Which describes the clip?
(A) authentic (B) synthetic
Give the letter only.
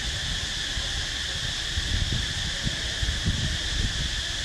A